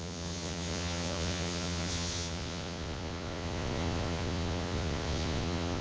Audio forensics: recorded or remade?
remade